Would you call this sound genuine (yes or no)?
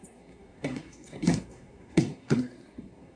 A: no